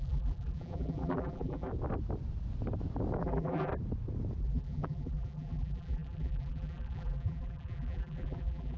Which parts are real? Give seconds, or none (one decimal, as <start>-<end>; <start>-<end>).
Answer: 1.7-3.2; 3.7-4.4